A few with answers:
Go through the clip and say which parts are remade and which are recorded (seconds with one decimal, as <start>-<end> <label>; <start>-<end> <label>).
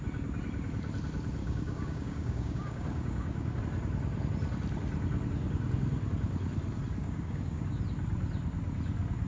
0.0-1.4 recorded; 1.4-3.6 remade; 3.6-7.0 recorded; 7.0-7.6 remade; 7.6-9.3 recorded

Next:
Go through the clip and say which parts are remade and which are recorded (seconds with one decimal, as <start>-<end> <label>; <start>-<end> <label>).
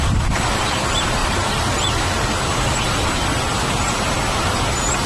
0.0-1.2 recorded; 1.2-2.3 remade; 2.3-5.1 recorded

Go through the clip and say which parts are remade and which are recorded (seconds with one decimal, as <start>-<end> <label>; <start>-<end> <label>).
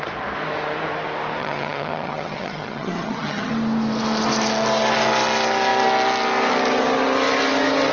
0.0-1.4 recorded; 1.4-3.5 remade; 3.5-7.9 recorded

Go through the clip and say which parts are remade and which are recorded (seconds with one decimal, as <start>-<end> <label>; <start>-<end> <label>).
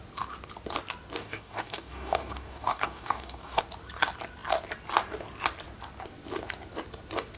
0.0-1.2 recorded; 1.2-3.6 remade; 3.6-7.4 recorded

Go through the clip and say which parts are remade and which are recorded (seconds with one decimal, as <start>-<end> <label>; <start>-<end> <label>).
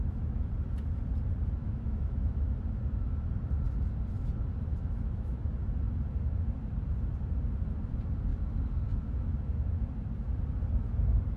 0.0-1.6 recorded; 1.6-2.5 remade; 2.5-4.7 recorded; 4.7-5.5 remade; 5.5-11.4 recorded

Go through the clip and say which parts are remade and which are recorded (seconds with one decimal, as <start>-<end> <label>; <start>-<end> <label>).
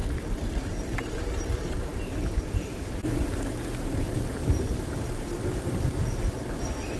0.0-0.7 recorded; 0.7-6.4 remade; 6.4-7.0 recorded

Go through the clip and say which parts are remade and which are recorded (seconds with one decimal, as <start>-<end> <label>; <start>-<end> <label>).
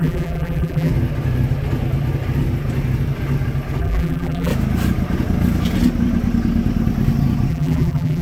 0.0-0.9 remade; 0.9-3.8 recorded; 3.8-4.5 remade; 4.5-7.5 recorded; 7.5-8.2 remade